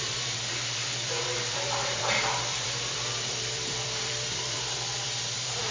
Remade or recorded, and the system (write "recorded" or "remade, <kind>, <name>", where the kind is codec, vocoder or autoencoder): remade, vocoder, BigVGAN v2